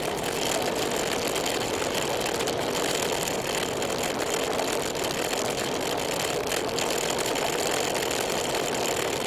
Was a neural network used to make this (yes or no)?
no